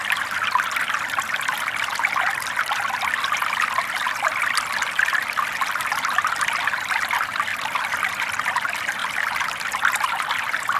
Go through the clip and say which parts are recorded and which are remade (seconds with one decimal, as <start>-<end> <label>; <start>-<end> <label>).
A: 0.0-3.4 recorded; 3.4-5.8 remade; 5.8-10.8 recorded